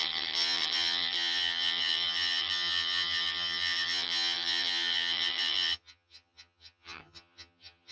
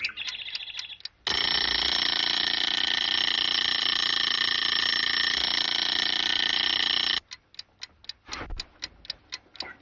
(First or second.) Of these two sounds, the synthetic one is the first